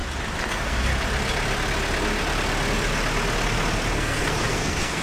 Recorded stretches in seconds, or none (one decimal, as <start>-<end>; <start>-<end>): 0.0-0.5; 0.9-3.9